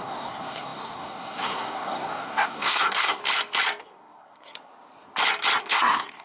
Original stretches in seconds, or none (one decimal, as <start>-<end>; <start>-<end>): 3.2-3.8; 4.7-5.6